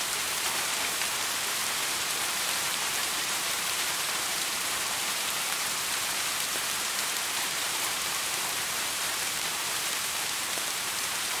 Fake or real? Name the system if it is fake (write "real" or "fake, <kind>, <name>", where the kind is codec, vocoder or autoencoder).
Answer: fake, vocoder, BigVGAN v2